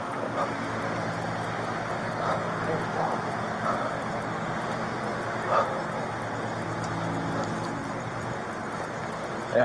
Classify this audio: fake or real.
real